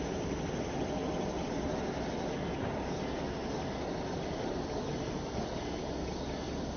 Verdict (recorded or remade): recorded